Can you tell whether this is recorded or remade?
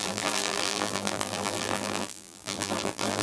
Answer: remade